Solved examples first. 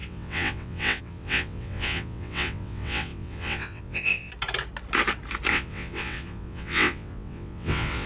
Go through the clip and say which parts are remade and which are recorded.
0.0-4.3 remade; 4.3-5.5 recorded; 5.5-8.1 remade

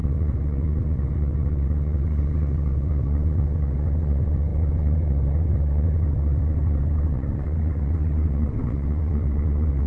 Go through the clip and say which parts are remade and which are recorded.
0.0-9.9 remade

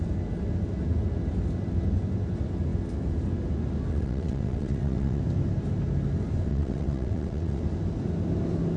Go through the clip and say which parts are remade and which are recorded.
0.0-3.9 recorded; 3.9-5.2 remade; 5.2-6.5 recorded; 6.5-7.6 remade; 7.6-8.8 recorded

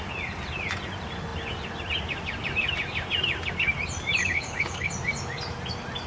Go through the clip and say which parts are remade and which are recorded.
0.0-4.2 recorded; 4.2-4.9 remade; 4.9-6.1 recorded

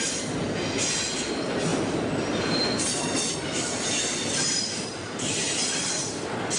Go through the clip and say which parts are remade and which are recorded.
0.0-1.7 recorded; 1.7-5.7 remade; 5.7-6.6 recorded

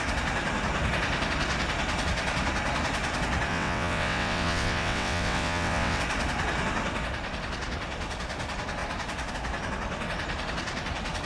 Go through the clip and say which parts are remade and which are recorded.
0.0-3.5 recorded; 3.5-6.0 remade; 6.0-11.3 recorded

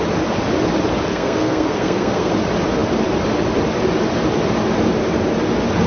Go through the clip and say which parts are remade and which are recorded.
0.0-1.1 recorded; 1.1-2.3 remade; 2.3-5.9 recorded